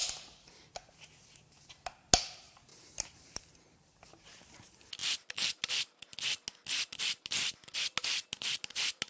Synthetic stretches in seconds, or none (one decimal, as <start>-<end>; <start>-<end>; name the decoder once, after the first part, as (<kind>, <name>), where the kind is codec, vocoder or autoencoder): none